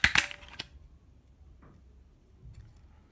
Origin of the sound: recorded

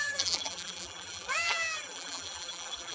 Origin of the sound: remade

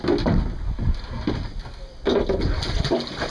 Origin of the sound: recorded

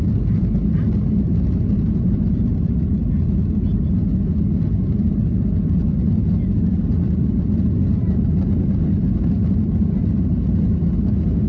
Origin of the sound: recorded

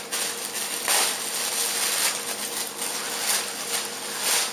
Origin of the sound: recorded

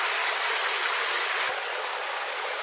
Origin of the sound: remade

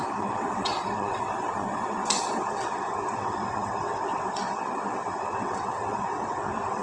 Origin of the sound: remade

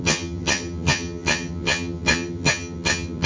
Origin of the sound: remade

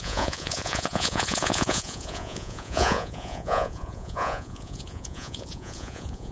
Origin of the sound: remade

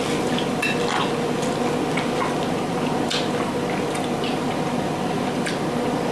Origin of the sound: recorded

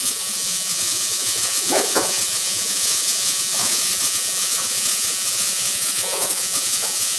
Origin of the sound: remade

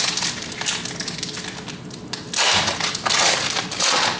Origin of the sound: recorded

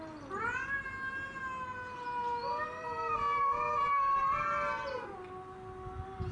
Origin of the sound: recorded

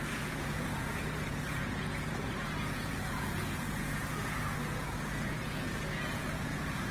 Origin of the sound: remade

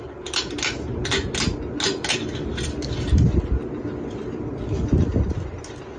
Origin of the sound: recorded